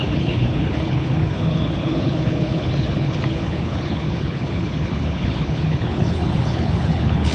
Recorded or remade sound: remade